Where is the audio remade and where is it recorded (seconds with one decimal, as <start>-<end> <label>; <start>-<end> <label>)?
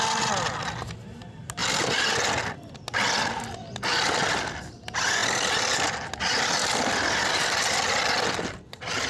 0.0-9.1 recorded